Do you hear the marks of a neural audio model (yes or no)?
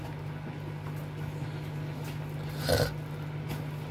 no